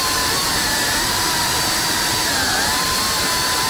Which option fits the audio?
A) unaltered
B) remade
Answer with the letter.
B